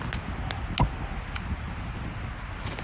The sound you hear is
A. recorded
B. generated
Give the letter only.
A